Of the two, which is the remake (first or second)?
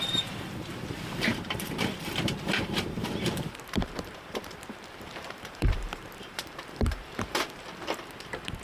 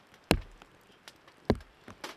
first